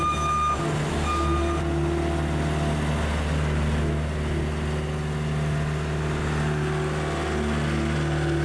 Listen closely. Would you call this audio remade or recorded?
recorded